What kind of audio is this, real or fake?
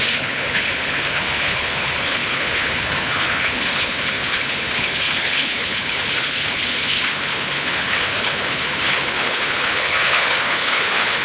fake